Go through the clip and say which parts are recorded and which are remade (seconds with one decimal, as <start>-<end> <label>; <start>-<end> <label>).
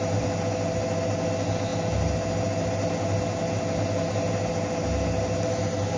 0.0-6.0 recorded